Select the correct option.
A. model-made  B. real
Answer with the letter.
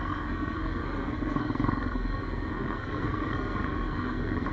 A